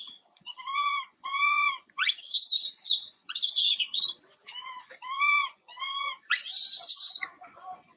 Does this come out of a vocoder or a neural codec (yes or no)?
yes